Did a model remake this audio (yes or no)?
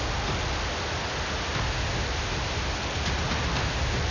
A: no